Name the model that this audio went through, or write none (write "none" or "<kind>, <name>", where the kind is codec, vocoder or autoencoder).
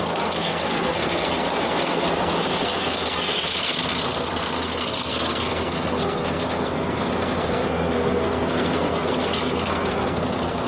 codec, SNAC